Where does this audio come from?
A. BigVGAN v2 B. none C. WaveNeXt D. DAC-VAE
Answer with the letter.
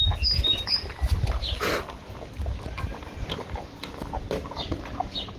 B